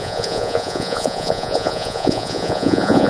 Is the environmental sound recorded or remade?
remade